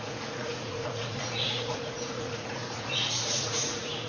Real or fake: fake